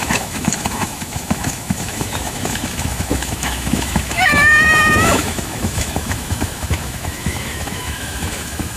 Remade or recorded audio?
remade